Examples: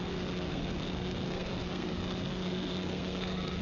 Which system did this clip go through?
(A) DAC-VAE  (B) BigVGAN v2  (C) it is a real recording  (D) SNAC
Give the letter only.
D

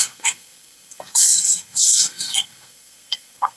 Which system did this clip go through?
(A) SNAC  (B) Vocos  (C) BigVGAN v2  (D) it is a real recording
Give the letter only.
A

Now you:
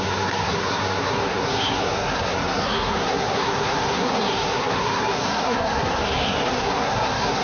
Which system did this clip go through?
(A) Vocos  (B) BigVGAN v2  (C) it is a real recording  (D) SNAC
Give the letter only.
D